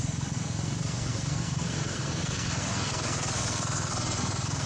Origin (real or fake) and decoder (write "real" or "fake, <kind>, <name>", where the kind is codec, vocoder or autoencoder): fake, codec, SNAC